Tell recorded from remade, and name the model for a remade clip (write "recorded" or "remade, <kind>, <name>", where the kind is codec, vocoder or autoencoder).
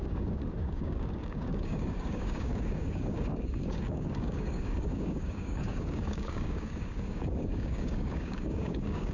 remade, codec, DAC